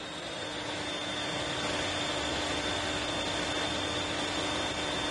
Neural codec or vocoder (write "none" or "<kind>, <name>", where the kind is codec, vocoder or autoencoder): none